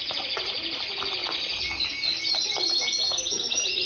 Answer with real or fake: real